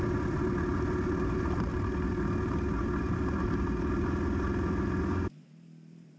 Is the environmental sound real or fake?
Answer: real